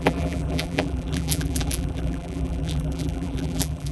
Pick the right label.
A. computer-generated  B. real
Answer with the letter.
A